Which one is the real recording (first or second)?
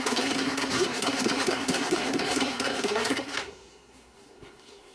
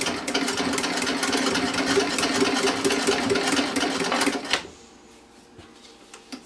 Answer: second